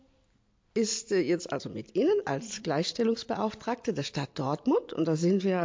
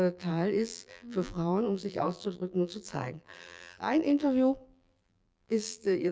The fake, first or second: second